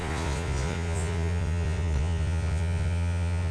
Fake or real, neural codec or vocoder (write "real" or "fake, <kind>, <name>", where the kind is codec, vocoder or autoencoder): fake, vocoder, Vocos